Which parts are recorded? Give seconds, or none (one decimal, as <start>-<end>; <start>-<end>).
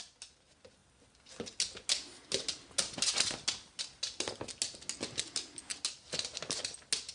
0.0-7.1